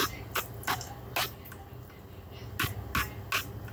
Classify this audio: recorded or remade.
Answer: recorded